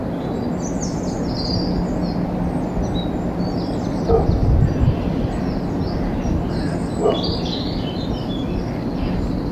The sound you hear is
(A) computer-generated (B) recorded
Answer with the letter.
B